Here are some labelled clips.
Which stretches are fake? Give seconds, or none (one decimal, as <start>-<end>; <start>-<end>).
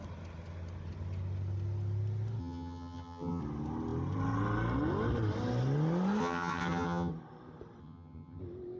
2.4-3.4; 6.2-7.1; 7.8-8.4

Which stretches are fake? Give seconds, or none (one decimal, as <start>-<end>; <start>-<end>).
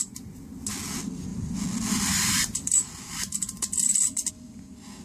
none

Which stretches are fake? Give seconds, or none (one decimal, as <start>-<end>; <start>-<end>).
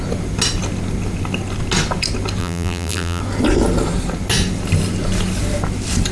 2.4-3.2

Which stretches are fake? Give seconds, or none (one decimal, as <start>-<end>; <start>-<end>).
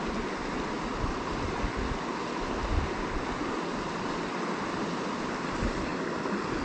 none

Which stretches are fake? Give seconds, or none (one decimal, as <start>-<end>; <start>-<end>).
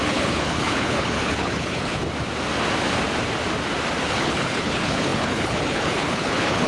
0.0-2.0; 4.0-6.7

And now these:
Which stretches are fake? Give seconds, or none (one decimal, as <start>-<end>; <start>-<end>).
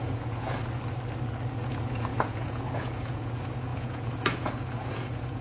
0.0-0.6; 1.6-5.4